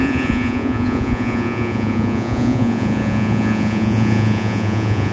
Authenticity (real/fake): fake